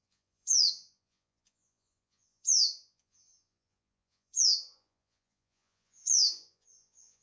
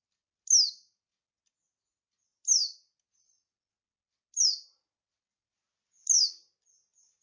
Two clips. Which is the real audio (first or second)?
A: second